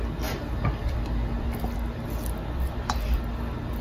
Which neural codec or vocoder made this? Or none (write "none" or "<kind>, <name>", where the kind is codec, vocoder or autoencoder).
none